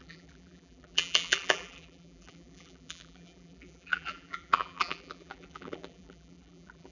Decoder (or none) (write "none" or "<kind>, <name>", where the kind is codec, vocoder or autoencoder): vocoder, BigVGAN v2